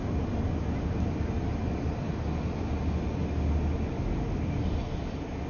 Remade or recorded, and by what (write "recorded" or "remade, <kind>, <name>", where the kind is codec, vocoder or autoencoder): recorded